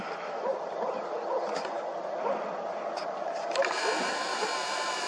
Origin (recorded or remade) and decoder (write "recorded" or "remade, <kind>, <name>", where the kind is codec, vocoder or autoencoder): recorded